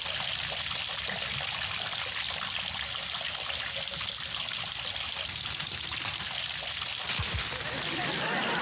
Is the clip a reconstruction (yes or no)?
no